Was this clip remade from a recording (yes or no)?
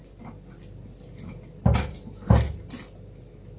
no